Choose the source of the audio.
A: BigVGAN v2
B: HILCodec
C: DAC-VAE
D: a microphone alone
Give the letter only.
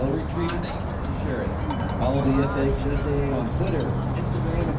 D